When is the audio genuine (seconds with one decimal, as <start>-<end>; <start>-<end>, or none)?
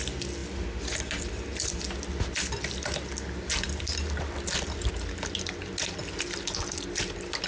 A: 0.0-7.5